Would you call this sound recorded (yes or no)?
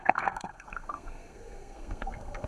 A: no